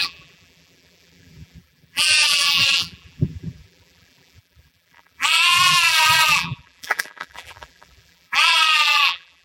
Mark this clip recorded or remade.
remade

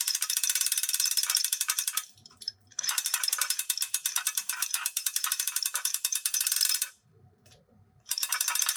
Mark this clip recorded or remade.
remade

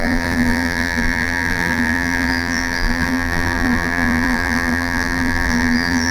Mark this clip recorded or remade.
remade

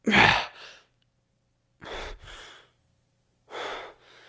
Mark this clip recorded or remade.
recorded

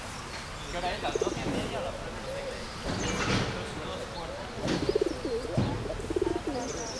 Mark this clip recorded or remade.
recorded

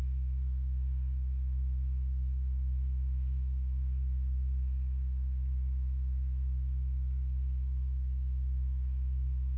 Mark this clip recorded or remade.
remade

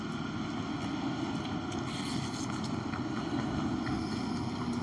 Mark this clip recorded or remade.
recorded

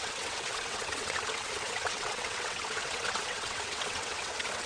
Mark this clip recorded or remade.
remade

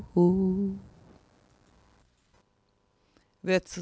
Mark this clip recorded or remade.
recorded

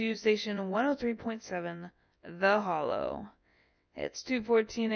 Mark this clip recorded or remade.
remade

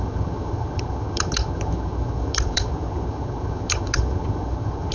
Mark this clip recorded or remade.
remade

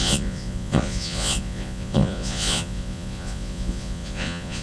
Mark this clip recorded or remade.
remade